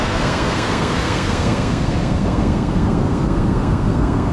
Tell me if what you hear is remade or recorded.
remade